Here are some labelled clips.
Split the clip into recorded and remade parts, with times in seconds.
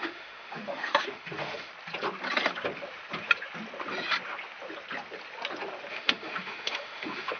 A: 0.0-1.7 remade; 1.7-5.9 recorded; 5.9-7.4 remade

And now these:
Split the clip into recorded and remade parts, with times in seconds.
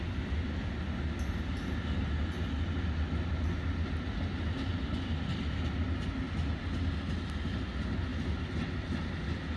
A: 0.0-9.6 recorded